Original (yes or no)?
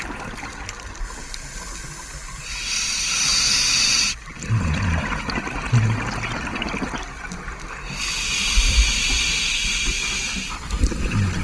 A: yes